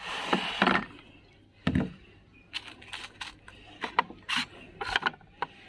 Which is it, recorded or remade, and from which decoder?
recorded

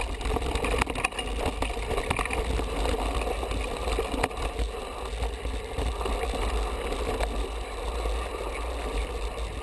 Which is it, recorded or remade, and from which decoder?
recorded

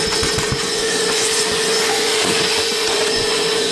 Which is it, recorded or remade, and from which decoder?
remade, vocoder, Vocos